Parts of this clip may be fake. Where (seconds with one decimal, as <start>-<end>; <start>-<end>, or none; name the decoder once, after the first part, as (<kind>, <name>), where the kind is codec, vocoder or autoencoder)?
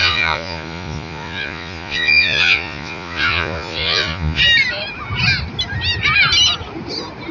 0.0-4.4 (vocoder, Vocos)